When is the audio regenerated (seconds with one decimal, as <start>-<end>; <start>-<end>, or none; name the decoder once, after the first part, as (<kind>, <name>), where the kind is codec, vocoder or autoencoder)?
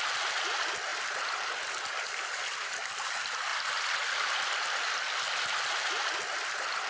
none